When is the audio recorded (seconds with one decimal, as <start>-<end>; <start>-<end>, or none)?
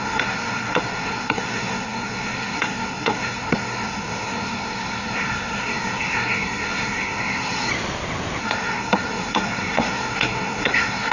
7.7-8.4